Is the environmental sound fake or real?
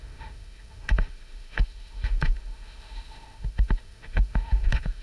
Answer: fake